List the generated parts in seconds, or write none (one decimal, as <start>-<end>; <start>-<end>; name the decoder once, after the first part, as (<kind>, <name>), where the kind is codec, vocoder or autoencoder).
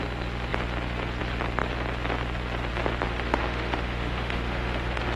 3.1-5.2 (autoencoder, DAC-VAE)